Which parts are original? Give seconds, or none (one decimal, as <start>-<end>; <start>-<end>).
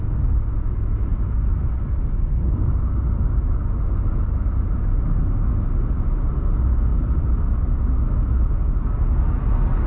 0.0-9.9